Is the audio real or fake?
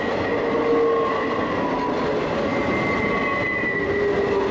real